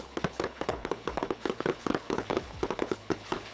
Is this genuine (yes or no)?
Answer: no